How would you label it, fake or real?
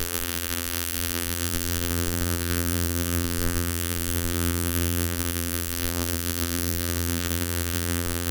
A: fake